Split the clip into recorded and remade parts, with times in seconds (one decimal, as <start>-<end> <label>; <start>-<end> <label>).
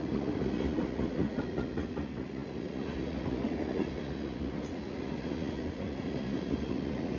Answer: 0.0-7.2 remade